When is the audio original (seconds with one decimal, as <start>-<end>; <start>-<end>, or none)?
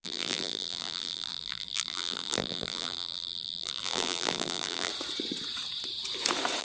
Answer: 4.9-6.6